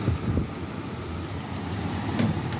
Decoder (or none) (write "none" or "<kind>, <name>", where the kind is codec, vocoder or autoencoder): none